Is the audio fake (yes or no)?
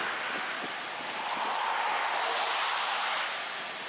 no